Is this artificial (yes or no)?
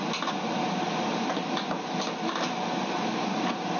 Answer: no